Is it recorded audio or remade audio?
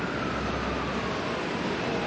recorded